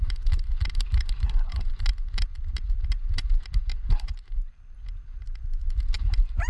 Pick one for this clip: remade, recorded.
remade